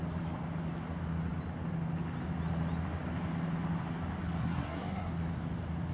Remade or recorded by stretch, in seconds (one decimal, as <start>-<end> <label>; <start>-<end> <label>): 0.0-4.4 recorded; 4.4-5.1 remade; 5.1-5.9 recorded